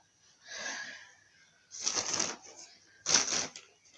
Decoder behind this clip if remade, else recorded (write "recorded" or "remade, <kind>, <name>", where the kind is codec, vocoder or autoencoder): recorded